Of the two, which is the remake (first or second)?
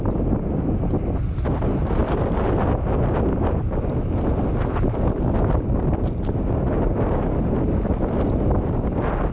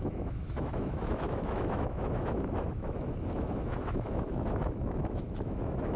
second